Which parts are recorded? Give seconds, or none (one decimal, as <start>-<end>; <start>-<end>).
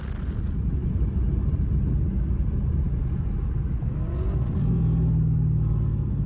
0.0-6.3